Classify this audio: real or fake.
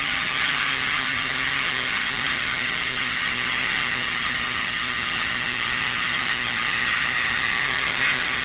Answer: fake